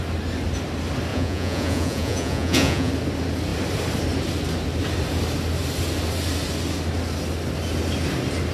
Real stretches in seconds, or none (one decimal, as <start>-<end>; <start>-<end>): 0.0-1.1; 2.9-8.5